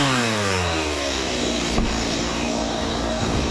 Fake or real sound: fake